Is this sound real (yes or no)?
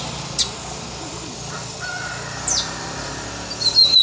yes